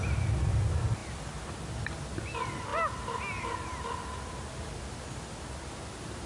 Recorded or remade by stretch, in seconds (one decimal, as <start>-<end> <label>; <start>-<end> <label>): 0.0-6.3 recorded